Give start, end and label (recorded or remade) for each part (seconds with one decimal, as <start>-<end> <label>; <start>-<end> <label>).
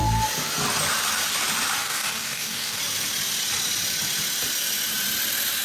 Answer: 0.0-1.8 recorded; 1.8-2.8 remade; 2.8-5.6 recorded